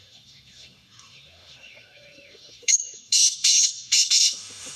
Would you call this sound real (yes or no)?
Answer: no